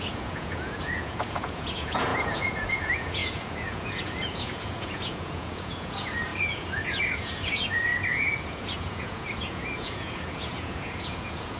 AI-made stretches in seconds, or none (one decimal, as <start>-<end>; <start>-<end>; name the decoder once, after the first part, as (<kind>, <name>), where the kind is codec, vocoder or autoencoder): 0.0-11.6 (vocoder, Vocos)